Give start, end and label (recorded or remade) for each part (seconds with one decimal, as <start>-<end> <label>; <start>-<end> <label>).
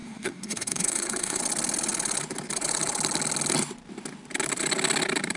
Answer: 0.0-1.4 remade; 1.4-5.4 recorded